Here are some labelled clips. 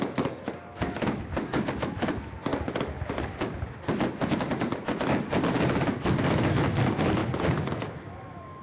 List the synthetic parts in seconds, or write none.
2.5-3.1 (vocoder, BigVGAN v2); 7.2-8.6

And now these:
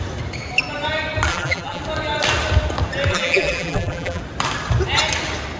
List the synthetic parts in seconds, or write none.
1.3-1.8 (vocoder, BigVGAN v2); 3.1-4.2

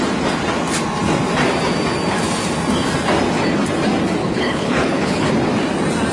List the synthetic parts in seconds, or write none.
4.2-5.3 (codec, HILCodec)

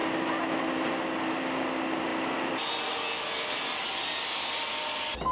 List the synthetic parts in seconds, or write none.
none

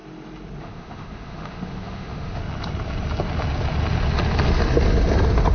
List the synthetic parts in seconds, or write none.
0.6-2.4 (autoencoder, DAC-VAE)

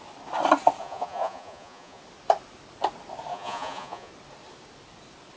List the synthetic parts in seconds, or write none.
0.8-2.0 (vocoder, Vocos); 3.3-4.1

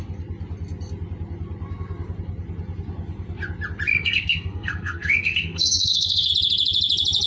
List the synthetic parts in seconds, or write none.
3.9-6.3 (codec, SNAC)